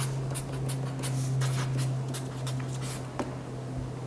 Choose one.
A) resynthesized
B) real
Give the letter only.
B